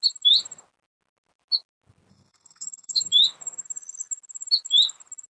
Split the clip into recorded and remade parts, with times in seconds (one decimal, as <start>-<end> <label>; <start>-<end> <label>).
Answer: 0.0-2.1 recorded; 2.1-3.0 remade; 3.0-5.3 recorded